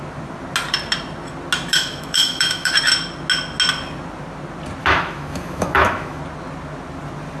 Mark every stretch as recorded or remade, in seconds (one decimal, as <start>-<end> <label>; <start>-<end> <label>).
0.0-1.7 recorded; 1.7-2.7 remade; 2.7-4.8 recorded; 4.8-6.2 remade; 6.2-7.4 recorded